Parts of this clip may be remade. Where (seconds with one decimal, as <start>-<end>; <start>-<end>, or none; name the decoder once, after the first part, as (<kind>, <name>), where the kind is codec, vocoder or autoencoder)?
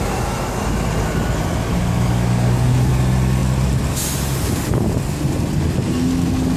1.7-2.9 (codec, DAC)